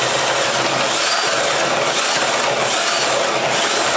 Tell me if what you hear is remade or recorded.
recorded